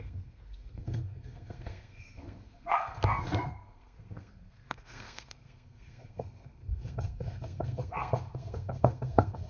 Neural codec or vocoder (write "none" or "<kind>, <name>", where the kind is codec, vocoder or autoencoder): codec, SNAC